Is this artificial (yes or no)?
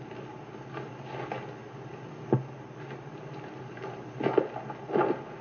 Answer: no